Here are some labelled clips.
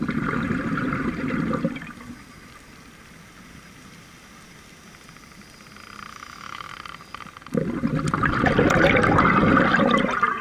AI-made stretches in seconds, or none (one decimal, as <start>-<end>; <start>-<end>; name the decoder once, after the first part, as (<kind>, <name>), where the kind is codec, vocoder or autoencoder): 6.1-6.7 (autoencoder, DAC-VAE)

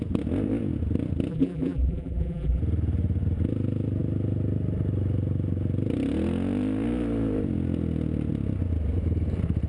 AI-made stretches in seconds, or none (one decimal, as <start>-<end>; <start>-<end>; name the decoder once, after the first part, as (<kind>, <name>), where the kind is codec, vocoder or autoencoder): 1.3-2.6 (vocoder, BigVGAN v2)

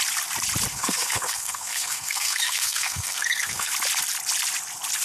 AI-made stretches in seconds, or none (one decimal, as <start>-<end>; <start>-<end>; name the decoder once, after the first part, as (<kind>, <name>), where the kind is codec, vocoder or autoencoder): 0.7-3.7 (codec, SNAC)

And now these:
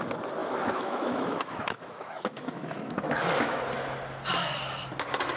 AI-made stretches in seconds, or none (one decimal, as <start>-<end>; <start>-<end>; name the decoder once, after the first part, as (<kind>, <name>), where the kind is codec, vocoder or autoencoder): 0.4-3.6 (autoencoder, DAC-VAE)

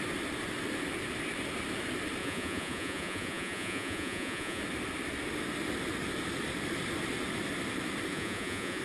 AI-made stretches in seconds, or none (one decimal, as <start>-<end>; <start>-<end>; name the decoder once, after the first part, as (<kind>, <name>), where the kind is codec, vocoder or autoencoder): 2.2-4.6 (vocoder, Vocos); 8.1-8.8

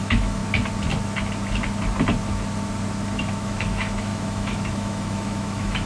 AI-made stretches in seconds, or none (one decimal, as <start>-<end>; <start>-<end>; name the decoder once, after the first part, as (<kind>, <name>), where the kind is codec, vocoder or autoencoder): 0.0-0.4 (autoencoder, DAC-VAE); 3.3-5.9